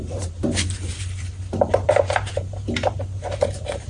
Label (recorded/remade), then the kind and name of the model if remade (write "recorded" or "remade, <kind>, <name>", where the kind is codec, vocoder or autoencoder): remade, vocoder, BigVGAN v2